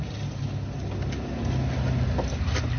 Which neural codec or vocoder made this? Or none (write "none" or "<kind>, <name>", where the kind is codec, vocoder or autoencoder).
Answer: none